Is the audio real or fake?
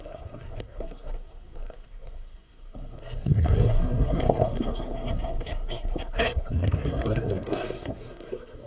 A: fake